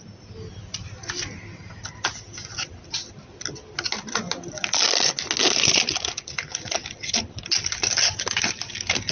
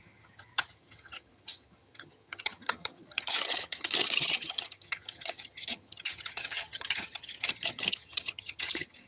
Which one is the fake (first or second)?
second